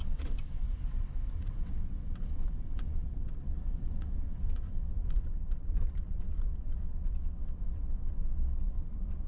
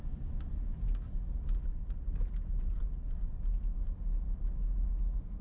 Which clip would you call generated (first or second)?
first